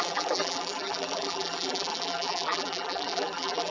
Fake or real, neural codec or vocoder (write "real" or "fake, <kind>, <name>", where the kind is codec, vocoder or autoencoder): fake, vocoder, BigVGAN v2